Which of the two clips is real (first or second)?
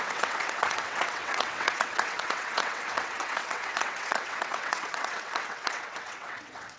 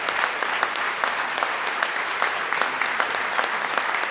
second